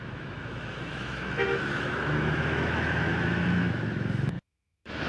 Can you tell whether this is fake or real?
fake